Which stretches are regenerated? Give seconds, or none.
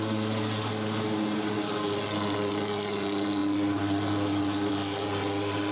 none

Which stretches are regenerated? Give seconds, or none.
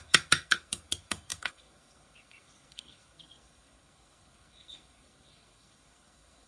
0.0-6.5 (codec, SNAC)